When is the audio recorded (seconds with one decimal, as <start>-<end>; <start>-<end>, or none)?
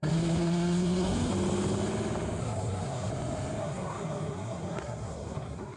1.3-2.4; 3.1-3.6